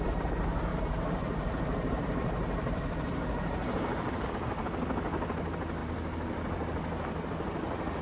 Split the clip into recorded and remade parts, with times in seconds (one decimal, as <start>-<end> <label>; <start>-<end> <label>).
0.0-0.7 recorded; 0.7-4.3 remade; 4.3-8.0 recorded